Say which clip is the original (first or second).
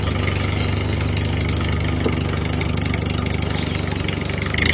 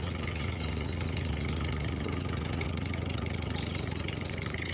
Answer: first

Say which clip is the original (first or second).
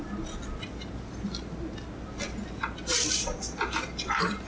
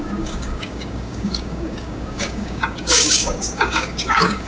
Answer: first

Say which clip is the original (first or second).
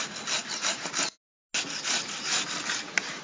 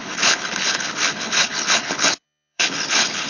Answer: first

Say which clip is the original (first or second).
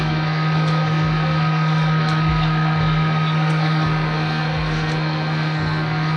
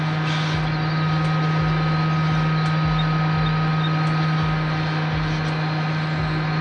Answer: second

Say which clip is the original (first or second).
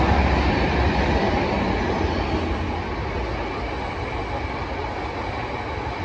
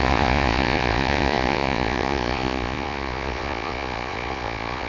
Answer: first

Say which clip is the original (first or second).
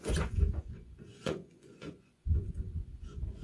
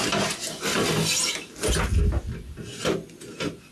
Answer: second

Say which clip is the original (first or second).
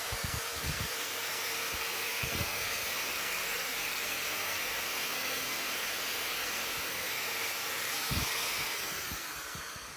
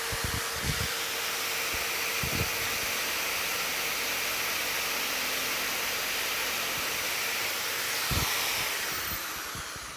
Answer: second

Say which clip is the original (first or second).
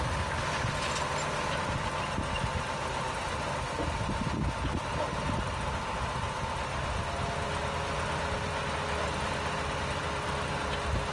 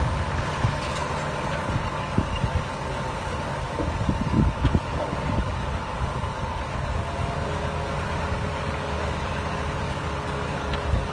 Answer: first